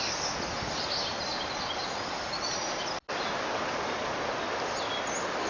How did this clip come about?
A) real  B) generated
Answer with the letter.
A